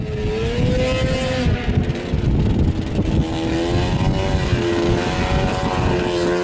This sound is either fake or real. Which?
real